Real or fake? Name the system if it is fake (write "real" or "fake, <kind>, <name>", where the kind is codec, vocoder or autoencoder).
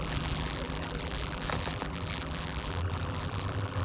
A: fake, vocoder, BigVGAN v2